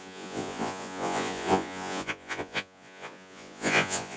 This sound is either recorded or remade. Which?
remade